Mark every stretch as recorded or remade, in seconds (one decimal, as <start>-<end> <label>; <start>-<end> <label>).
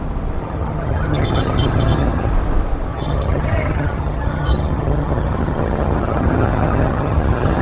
0.0-0.4 recorded; 0.4-2.3 remade; 2.3-2.9 recorded; 2.9-7.6 remade